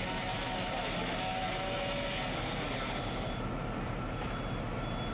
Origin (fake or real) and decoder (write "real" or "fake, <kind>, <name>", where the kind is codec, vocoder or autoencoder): real